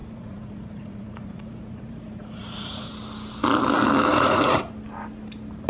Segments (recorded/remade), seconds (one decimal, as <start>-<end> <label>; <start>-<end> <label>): 0.0-2.9 remade; 2.9-4.1 recorded; 4.1-4.7 remade; 4.7-5.7 recorded